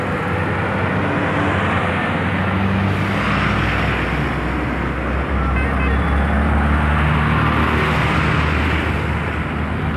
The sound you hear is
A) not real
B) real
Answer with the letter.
B